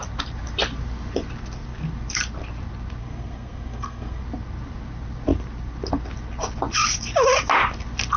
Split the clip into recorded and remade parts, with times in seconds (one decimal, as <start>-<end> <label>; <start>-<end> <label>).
0.0-3.0 recorded; 3.0-4.2 remade; 4.2-8.2 recorded